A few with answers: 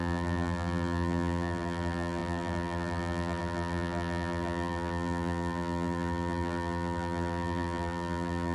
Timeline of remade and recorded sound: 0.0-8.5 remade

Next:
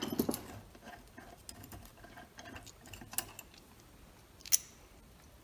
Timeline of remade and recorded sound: 0.0-5.4 recorded

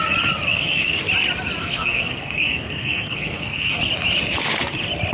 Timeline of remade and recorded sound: 0.0-0.5 recorded; 0.5-1.0 remade; 1.0-1.6 recorded; 1.6-3.8 remade; 3.8-5.1 recorded

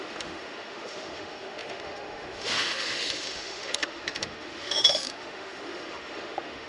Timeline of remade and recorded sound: 0.0-6.7 remade

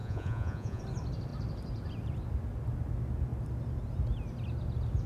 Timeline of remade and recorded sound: 0.0-0.8 remade; 0.8-5.1 recorded